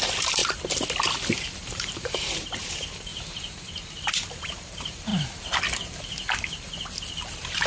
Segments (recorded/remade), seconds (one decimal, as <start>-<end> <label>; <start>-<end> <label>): 0.0-0.4 remade; 0.4-1.6 recorded; 1.6-3.1 remade; 3.1-3.9 recorded; 3.9-5.1 remade; 5.1-7.1 recorded; 7.1-7.7 remade